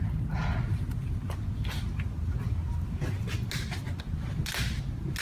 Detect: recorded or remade recorded